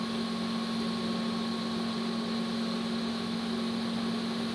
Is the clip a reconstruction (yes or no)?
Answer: no